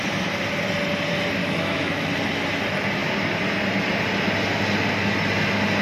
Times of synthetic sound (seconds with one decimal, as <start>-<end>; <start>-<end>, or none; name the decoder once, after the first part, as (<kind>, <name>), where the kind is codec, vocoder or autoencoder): 1.4-2.1 (autoencoder, DAC-VAE)